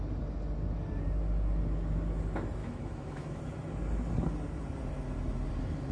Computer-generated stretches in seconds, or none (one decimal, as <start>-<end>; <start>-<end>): 2.6-3.4